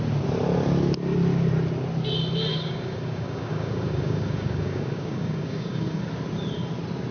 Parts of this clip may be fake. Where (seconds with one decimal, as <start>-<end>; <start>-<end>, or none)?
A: 2.5-6.1